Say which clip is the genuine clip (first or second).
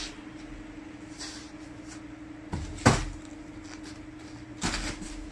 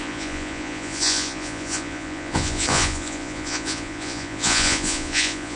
first